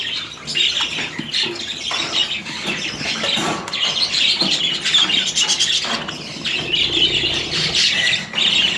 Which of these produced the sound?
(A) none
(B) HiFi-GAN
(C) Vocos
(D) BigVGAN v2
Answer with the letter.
A